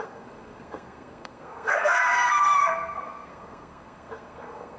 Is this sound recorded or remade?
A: remade